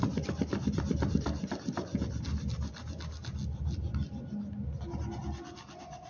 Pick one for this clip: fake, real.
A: real